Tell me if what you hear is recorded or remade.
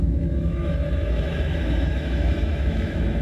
remade